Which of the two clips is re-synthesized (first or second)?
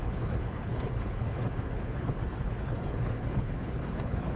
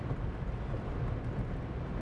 first